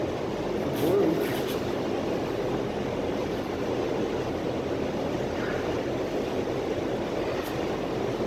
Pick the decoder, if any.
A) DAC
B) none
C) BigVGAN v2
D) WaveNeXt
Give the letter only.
B